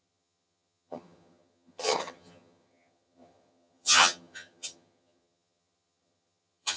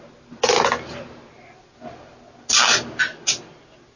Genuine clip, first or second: second